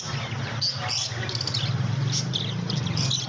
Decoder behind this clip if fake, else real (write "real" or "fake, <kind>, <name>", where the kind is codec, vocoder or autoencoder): real